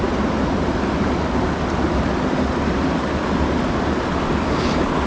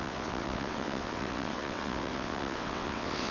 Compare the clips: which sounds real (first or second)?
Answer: first